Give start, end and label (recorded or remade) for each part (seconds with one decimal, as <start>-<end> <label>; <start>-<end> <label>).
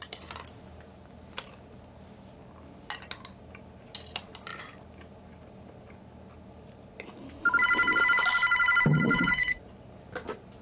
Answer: 0.0-8.9 recorded; 8.9-9.7 remade; 9.7-10.6 recorded